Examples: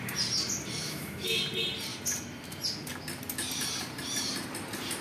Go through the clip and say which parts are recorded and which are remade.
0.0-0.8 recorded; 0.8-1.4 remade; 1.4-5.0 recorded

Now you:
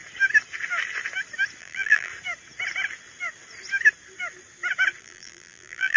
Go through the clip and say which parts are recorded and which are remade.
0.0-1.6 recorded; 1.6-2.1 remade; 2.1-5.0 recorded; 5.0-6.0 remade

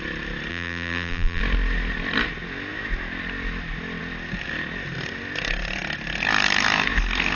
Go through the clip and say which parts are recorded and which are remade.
0.0-0.5 recorded; 0.5-1.4 remade; 1.4-7.4 recorded